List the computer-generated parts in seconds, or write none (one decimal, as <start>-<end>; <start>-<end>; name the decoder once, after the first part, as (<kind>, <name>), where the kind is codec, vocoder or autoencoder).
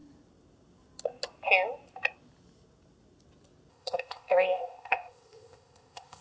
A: 3.7-6.2 (codec, ZipCodec)